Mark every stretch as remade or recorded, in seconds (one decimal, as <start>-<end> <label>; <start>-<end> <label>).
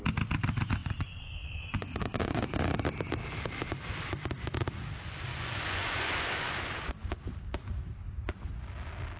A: 0.0-0.8 recorded; 0.8-2.7 remade; 2.7-5.3 recorded; 5.3-6.9 remade; 6.9-9.2 recorded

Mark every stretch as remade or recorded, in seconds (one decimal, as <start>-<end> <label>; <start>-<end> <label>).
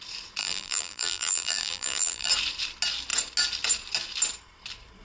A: 0.0-0.4 recorded; 0.4-2.3 remade; 2.3-5.0 recorded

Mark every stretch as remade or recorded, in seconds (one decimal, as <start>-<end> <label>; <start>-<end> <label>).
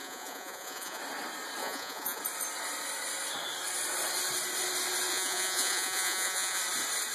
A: 0.0-1.0 remade; 1.0-1.6 recorded; 1.6-2.2 remade; 2.2-5.1 recorded; 5.1-6.6 remade; 6.6-7.1 recorded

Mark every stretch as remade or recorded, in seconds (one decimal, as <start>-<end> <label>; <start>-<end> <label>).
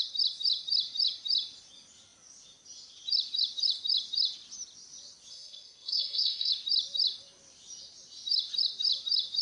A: 0.0-5.3 recorded; 5.3-6.5 remade; 6.5-9.4 recorded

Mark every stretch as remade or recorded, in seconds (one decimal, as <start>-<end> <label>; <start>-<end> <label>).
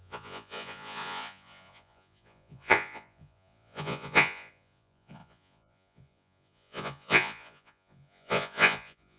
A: 0.0-9.2 remade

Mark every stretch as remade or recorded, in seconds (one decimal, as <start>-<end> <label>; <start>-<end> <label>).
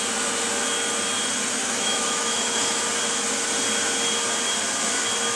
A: 0.0-1.6 recorded; 1.6-2.8 remade; 2.8-5.4 recorded